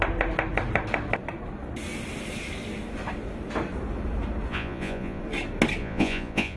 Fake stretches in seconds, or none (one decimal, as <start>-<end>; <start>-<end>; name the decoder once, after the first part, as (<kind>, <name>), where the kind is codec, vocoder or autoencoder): 4.5-5.2 (vocoder, Vocos); 5.8-6.6